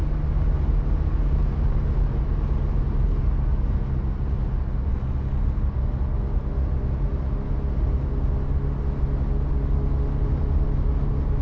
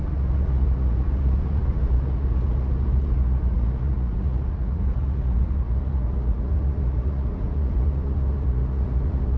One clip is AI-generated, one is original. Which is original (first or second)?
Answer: first